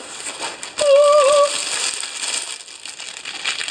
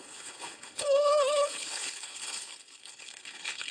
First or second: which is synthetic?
second